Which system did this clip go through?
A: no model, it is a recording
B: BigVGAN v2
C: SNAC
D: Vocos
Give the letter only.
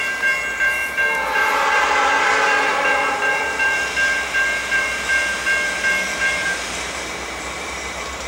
B